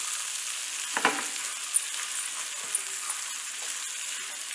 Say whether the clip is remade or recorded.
recorded